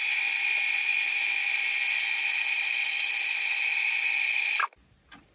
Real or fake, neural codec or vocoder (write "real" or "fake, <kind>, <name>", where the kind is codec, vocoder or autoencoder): real